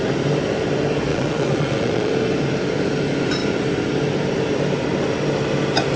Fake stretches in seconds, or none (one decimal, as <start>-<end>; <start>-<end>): 1.1-2.1